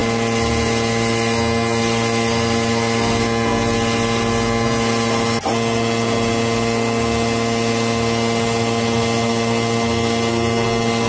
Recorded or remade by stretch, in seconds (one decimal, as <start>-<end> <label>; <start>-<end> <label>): 0.0-11.1 recorded